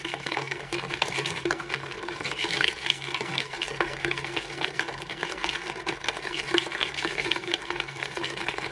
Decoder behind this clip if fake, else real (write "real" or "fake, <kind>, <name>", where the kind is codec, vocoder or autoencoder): fake, codec, SNAC